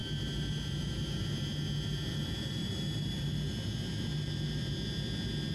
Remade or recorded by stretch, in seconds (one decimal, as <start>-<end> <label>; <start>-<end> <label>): 0.0-2.1 recorded; 2.1-3.5 remade; 3.5-4.1 recorded; 4.1-4.7 remade; 4.7-5.5 recorded